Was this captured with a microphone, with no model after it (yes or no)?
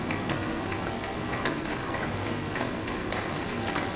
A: no